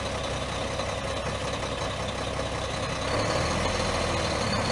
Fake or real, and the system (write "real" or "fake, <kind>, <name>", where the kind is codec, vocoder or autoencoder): real